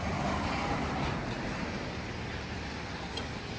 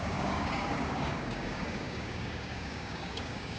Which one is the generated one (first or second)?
second